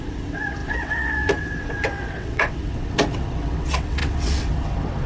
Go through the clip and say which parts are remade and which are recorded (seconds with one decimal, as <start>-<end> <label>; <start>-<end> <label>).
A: 0.0-5.1 remade